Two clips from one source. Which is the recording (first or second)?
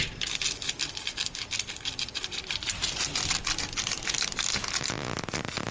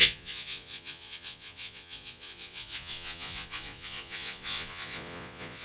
first